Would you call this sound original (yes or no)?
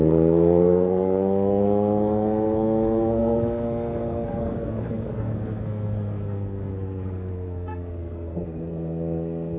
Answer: no